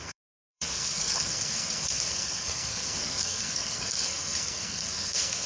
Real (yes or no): no